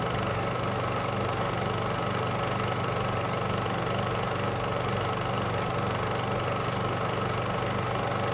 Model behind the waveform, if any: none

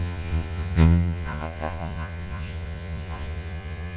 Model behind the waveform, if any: vocoder, Vocos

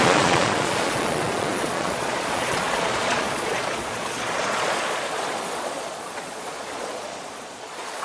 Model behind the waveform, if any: vocoder, Vocos